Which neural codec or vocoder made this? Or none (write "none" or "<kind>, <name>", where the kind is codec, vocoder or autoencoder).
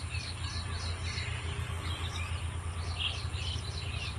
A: none